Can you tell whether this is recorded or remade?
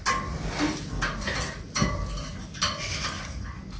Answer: recorded